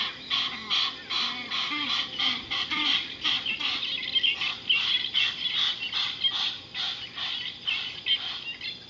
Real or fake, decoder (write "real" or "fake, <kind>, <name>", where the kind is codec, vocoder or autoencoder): real